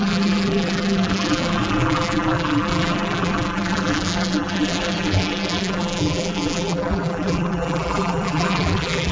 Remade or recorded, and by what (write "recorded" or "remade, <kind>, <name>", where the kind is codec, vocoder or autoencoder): remade, vocoder, BigVGAN v2